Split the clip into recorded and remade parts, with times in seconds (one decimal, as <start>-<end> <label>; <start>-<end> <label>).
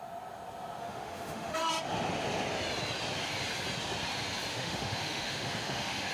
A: 0.0-0.8 recorded; 0.8-1.7 remade; 1.7-4.5 recorded; 4.5-6.1 remade